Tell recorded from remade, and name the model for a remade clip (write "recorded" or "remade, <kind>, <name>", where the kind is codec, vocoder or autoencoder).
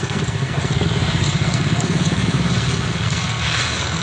remade, codec, SNAC